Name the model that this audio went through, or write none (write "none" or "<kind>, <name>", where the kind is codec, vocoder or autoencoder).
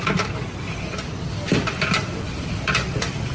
none